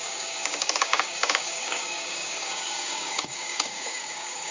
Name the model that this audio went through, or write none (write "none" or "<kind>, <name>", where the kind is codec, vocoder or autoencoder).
codec, DAC